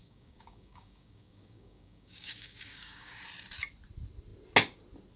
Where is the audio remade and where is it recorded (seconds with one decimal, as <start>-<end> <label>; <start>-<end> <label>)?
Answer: 0.0-3.1 remade; 3.1-5.2 recorded